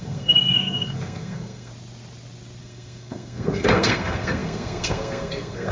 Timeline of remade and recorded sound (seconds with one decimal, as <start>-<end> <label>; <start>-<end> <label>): 0.0-1.7 remade; 1.7-2.6 recorded; 2.6-5.7 remade